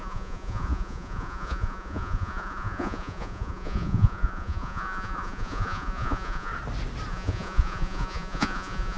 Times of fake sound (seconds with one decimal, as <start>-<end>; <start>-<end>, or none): 0.0-6.5; 7.1-9.0